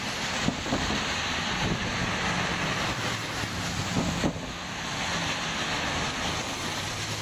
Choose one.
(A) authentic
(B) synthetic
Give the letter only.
A